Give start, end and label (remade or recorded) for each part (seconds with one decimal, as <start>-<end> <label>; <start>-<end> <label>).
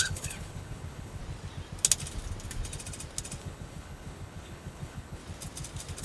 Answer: 0.0-1.2 remade; 1.2-3.4 recorded; 3.4-5.2 remade; 5.2-6.0 recorded